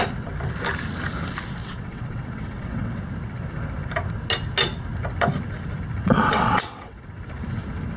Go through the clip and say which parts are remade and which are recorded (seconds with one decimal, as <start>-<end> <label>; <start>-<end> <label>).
0.0-1.6 recorded; 1.6-3.0 remade; 3.0-6.0 recorded; 6.0-7.0 remade; 7.0-8.0 recorded